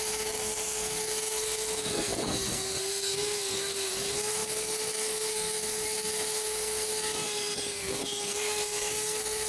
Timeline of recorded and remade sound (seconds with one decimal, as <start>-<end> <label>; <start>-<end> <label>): 0.0-9.5 remade